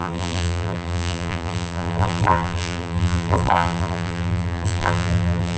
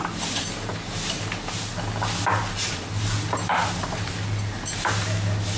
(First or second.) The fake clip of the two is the first